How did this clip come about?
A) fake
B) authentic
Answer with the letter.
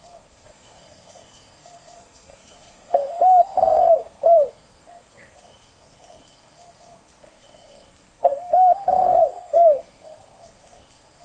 A